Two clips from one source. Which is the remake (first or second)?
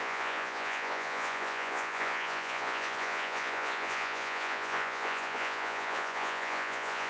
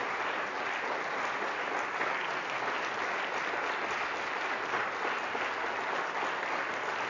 first